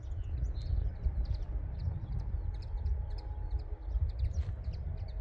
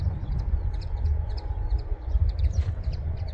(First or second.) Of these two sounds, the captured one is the first